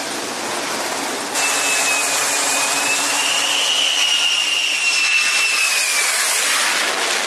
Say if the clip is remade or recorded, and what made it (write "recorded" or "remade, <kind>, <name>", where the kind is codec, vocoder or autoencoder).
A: recorded